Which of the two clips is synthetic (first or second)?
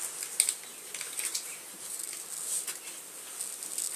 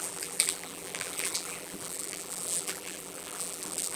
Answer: second